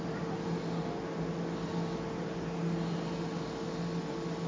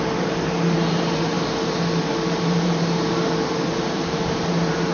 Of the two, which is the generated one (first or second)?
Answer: second